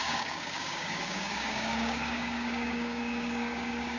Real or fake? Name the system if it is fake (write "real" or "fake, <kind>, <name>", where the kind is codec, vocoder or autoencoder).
fake, codec, DAC